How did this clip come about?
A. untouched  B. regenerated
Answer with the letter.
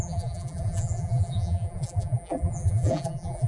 B